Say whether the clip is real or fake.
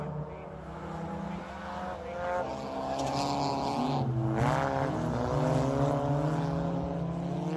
real